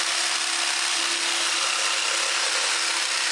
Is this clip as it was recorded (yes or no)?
yes